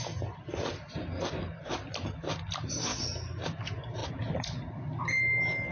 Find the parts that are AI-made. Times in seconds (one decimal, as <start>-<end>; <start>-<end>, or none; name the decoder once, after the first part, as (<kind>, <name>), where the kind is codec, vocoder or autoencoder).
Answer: 4.0-5.0 (vocoder, BigVGAN v2)